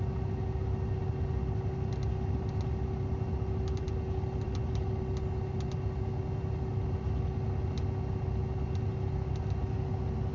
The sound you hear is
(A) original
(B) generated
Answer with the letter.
A